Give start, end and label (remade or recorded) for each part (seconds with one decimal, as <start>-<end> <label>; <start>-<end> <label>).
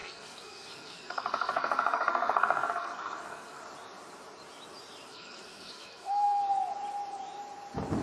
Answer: 0.0-3.6 remade; 3.6-5.1 recorded; 5.1-6.4 remade; 6.4-8.0 recorded